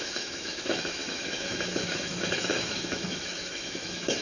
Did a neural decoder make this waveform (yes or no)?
yes